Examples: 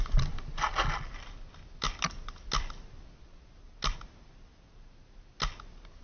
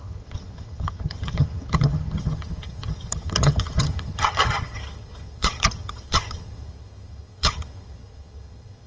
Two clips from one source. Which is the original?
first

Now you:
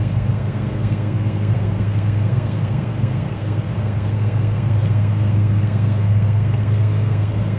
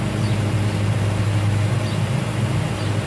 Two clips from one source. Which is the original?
second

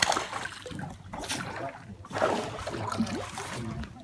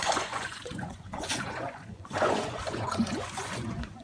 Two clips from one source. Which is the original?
first